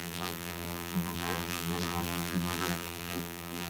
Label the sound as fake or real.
fake